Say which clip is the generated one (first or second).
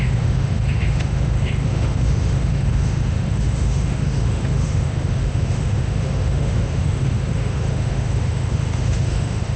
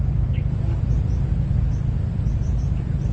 first